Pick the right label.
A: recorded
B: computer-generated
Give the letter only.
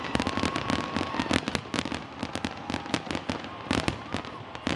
A